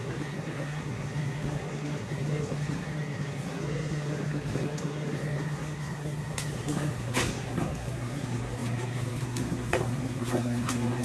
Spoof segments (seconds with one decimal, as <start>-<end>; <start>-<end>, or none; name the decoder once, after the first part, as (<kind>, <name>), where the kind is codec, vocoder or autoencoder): 0.0-11.0 (codec, SNAC)